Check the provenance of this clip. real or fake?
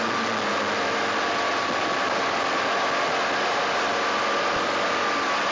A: real